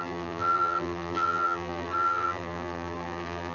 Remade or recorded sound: remade